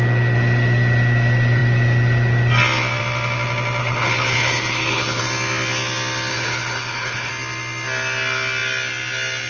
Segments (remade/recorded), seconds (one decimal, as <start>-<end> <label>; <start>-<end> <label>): 0.0-3.8 recorded; 3.8-5.2 remade; 5.2-6.3 recorded; 6.3-7.3 remade; 7.3-9.5 recorded